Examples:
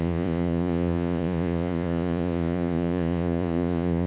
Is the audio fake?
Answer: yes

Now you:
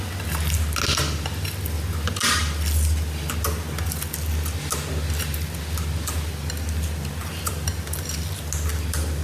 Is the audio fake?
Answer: no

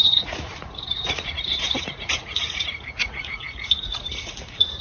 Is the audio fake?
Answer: yes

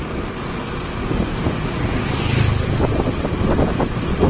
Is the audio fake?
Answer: no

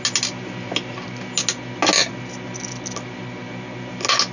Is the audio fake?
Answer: no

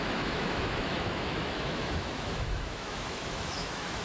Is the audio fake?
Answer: yes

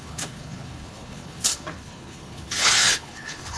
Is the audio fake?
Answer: yes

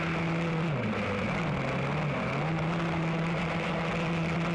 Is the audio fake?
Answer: no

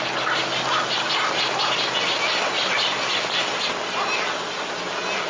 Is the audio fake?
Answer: no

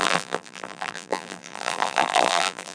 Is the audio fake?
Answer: yes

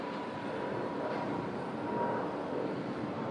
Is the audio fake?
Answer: yes